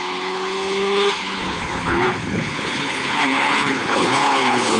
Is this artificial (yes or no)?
yes